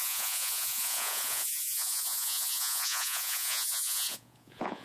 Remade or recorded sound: remade